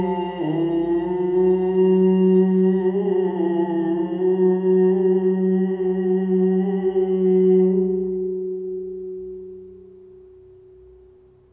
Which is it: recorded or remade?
recorded